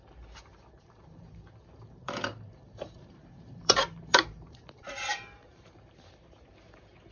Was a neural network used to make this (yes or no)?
yes